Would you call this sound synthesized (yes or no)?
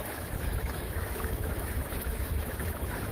yes